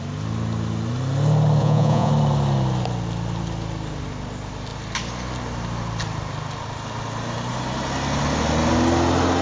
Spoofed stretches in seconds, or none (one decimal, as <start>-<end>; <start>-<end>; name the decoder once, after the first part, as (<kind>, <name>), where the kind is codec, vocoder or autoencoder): 1.6-2.1 (vocoder, Vocos)